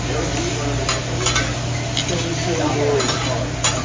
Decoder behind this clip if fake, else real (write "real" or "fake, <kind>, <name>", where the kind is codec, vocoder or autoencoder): real